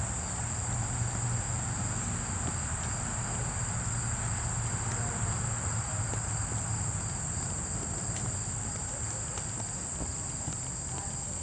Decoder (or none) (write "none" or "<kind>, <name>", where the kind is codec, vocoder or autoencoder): none